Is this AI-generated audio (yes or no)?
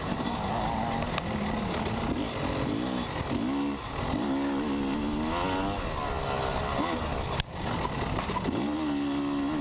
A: no